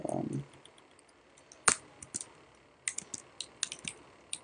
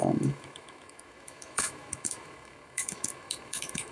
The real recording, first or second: first